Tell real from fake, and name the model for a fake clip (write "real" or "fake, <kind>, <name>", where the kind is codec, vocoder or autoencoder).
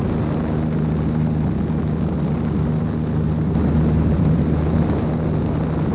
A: real